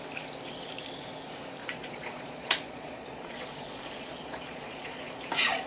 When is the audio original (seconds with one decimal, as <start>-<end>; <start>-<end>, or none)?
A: 0.0-1.6; 5.0-5.7